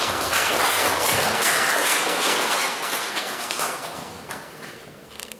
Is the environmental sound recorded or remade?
remade